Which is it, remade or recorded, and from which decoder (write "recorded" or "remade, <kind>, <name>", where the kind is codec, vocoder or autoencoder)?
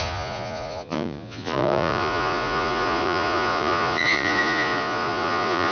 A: remade, vocoder, Vocos